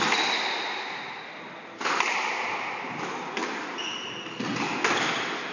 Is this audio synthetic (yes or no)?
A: no